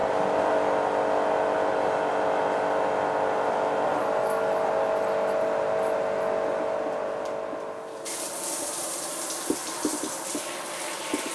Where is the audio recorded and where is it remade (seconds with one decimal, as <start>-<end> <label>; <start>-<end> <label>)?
0.0-11.3 recorded